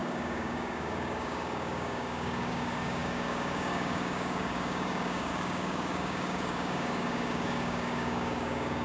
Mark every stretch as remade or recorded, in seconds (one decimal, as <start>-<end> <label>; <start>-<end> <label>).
0.0-8.8 remade